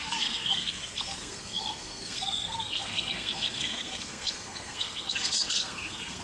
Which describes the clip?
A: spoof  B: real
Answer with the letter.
A